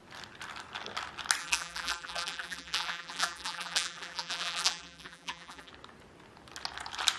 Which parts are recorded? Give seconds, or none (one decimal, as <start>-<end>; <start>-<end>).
0.0-1.4; 5.7-7.2